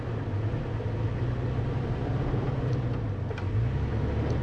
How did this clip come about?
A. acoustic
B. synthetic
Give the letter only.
A